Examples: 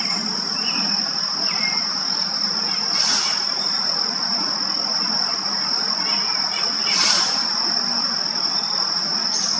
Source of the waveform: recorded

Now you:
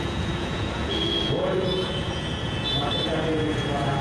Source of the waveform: remade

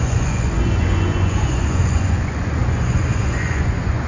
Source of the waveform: remade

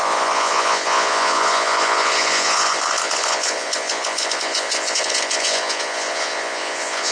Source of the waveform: remade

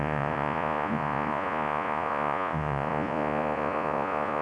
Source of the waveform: remade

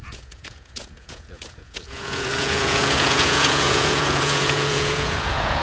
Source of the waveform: remade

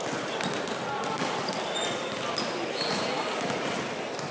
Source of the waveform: recorded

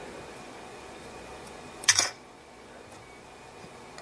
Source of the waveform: remade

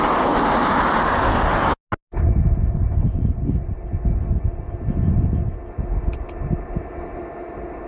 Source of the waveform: recorded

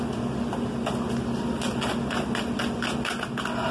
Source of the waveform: recorded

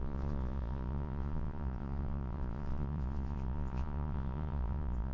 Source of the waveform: remade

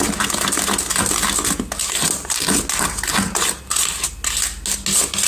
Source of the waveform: recorded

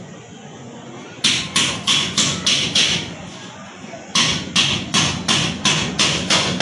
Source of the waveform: remade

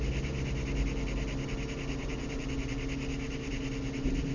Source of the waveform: recorded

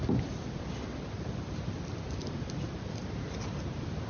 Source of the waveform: recorded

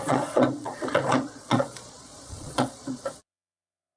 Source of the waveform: remade